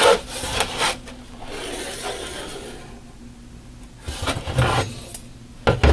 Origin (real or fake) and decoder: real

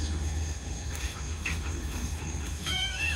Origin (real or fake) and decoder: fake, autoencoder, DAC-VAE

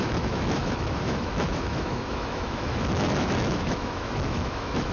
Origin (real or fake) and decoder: fake, autoencoder, DAC-VAE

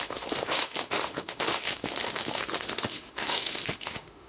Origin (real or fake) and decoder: fake, autoencoder, DAC-VAE